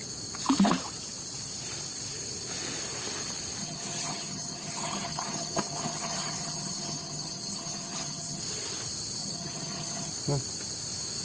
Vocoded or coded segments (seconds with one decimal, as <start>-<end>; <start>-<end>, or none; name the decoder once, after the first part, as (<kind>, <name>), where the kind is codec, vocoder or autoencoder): 3.6-8.4 (vocoder, HiFi-GAN); 9.2-10.1